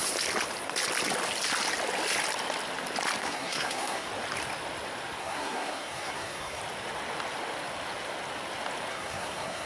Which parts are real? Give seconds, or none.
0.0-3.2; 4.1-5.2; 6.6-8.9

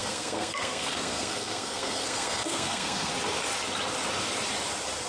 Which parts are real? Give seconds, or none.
3.1-5.1

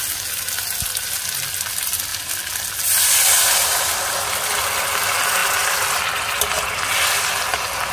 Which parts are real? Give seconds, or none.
0.0-7.9